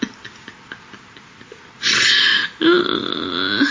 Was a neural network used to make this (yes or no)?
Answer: no